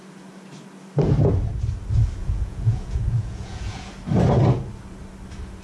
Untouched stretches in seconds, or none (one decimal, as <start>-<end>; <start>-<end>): 0.0-2.2; 3.9-5.6